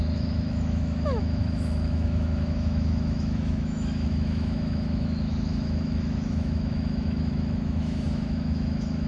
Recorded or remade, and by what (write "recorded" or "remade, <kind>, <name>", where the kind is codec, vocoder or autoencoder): remade, autoencoder, DAC-VAE